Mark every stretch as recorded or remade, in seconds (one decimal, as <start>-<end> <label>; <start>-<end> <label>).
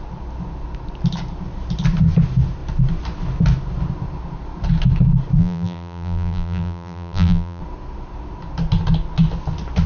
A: 0.0-5.4 recorded; 5.4-7.6 remade; 7.6-9.9 recorded